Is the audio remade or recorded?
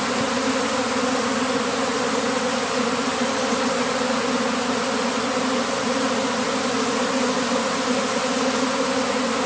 recorded